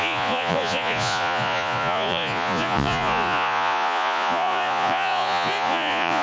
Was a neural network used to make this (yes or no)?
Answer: yes